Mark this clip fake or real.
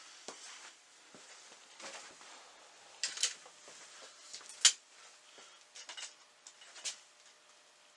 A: real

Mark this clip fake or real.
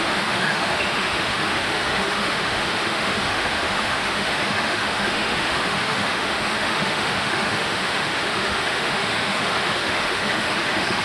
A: fake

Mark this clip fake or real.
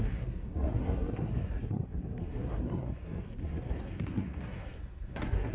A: fake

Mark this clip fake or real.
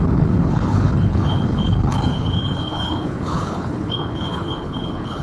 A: fake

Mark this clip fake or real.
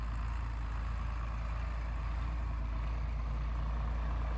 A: real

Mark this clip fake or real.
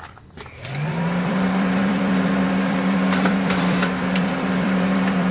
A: fake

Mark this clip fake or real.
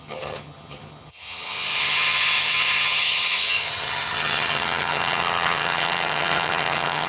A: fake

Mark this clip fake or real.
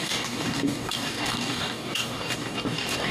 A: fake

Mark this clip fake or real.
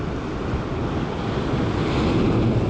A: real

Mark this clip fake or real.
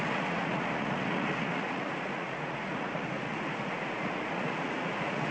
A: fake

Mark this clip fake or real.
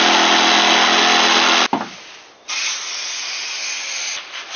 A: real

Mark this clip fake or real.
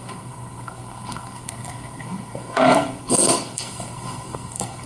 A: fake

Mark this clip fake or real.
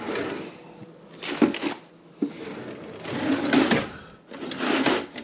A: real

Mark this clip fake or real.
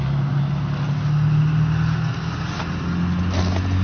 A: real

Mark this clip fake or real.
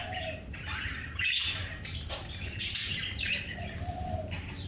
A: fake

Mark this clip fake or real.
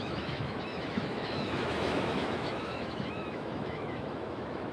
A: fake